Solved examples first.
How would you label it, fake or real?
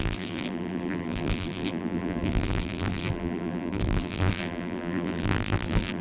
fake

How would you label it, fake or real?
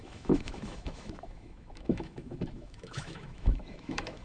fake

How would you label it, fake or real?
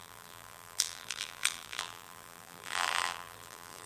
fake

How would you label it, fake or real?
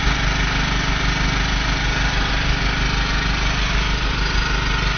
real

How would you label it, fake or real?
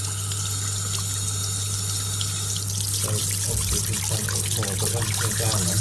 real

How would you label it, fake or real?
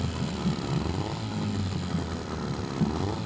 real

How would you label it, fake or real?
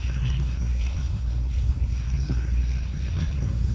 fake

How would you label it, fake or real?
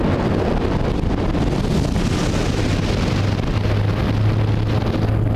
real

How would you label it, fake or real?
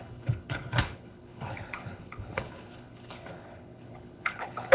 fake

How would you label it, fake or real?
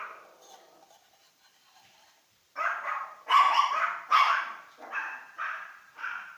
fake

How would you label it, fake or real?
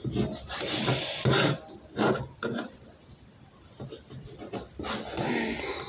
real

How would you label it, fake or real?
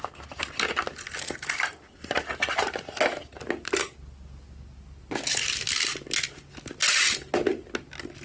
real